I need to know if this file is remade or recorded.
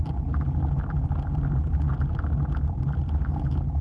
recorded